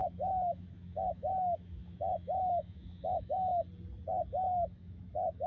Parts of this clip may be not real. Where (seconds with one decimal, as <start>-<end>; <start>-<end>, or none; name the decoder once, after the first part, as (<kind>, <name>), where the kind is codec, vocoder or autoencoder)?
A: 0.0-3.3 (autoencoder, DAC-VAE); 4.5-5.5